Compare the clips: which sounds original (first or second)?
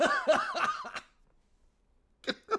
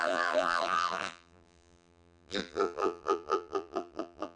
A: first